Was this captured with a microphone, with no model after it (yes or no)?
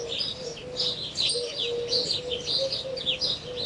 yes